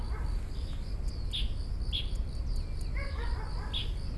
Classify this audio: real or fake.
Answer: real